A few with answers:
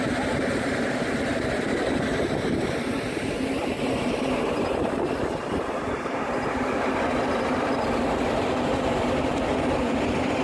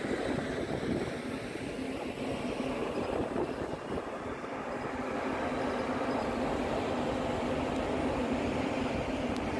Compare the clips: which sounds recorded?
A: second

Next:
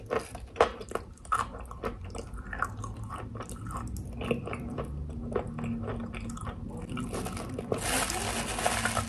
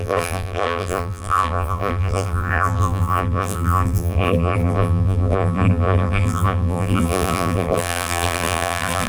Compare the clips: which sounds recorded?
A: first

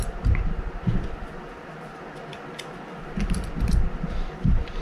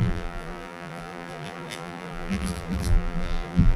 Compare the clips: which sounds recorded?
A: first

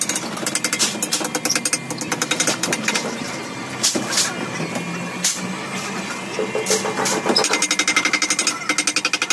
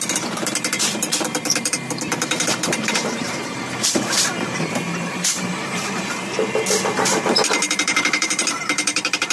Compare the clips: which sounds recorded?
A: first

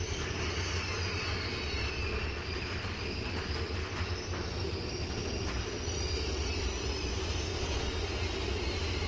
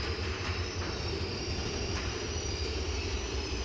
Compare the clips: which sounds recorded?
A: first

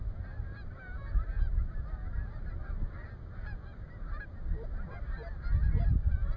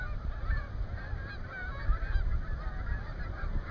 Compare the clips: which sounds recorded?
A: first